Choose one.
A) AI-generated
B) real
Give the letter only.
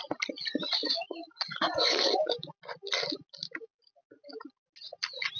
B